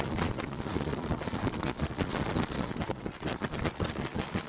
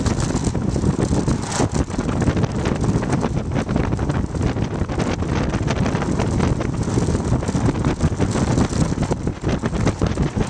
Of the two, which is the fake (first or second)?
first